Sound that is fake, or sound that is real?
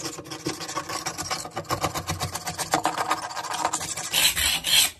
real